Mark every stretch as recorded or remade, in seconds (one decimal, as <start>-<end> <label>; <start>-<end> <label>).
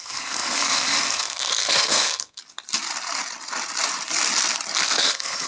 0.0-2.4 remade; 2.4-5.0 recorded; 5.0-5.5 remade